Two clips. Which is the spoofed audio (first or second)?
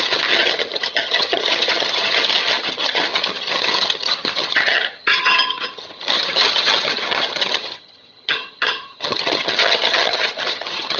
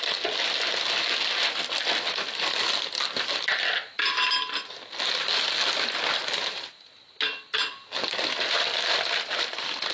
first